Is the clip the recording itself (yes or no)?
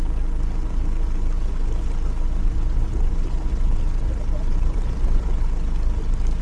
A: yes